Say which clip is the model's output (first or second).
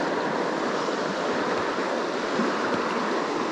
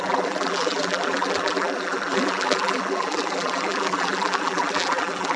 second